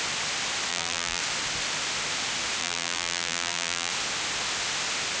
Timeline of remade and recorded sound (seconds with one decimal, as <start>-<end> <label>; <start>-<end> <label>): 0.0-0.7 recorded; 0.7-1.2 remade; 1.2-2.6 recorded; 2.6-3.9 remade; 3.9-5.2 recorded